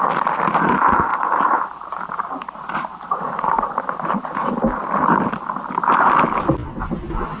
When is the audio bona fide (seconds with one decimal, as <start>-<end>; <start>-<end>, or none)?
0.0-1.1; 4.8-7.4